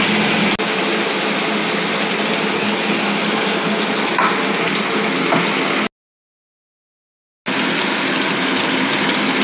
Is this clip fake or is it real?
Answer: real